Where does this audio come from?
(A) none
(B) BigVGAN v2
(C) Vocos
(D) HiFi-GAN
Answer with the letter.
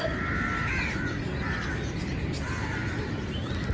A